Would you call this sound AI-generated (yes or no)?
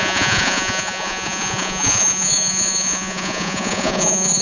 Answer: yes